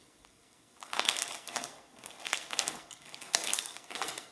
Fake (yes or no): yes